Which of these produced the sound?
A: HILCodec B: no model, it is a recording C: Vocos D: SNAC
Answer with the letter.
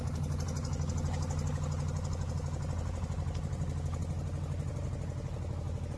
B